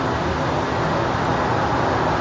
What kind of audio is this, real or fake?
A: real